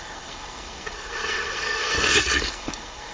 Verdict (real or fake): fake